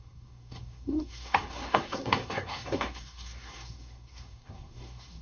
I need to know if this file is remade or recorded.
remade